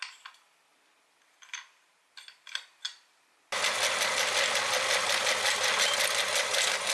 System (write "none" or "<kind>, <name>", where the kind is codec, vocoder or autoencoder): none